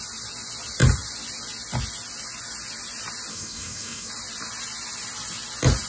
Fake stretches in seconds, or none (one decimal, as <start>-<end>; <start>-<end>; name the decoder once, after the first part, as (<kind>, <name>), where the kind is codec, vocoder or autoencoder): 3.3-4.1 (codec, DAC)